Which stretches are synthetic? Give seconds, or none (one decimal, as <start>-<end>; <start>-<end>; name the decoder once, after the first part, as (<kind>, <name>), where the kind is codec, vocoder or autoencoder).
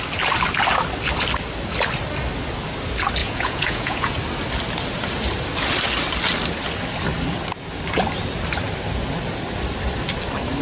3.2-4.1 (vocoder, Vocos)